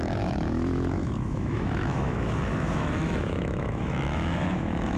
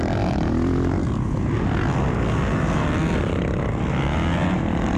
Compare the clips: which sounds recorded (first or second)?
second